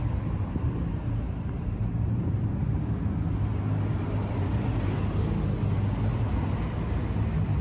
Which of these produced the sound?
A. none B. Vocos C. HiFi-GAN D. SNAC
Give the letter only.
A